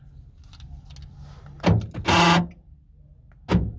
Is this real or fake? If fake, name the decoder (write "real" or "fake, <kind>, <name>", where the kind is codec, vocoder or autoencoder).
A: real